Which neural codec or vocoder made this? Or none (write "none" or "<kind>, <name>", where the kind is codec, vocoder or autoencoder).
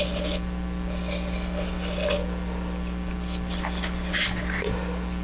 none